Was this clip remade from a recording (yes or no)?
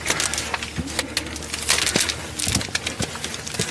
no